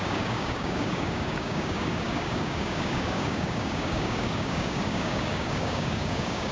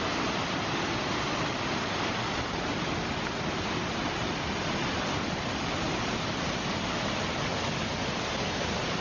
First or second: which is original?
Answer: second